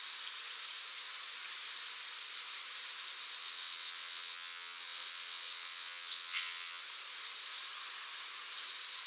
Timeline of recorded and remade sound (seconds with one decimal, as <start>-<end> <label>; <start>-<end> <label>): 0.0-3.4 recorded; 3.4-6.8 remade; 6.8-9.1 recorded